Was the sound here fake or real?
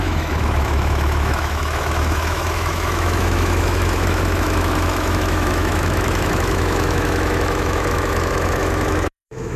fake